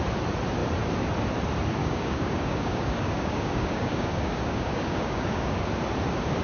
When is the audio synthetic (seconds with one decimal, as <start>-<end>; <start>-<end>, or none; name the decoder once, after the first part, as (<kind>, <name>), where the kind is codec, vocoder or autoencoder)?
1.8-5.6 (codec, DAC)